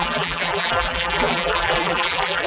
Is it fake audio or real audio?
fake